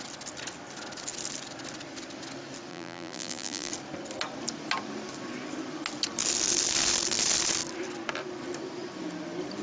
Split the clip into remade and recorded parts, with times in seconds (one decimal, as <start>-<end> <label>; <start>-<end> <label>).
0.0-2.7 recorded; 2.7-3.7 remade; 3.7-9.6 recorded